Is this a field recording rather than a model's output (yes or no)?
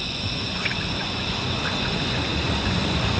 no